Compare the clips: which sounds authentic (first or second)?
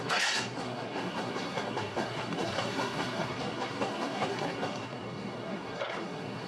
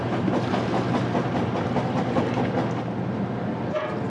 second